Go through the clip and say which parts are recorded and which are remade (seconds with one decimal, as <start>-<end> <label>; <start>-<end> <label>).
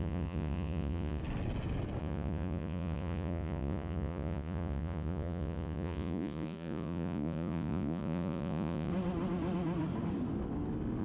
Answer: 0.0-1.2 remade; 1.2-2.0 recorded; 2.0-8.9 remade; 8.9-11.0 recorded